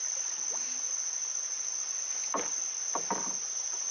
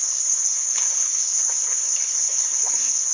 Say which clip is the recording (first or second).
first